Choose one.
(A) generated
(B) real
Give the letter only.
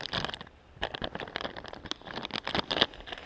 A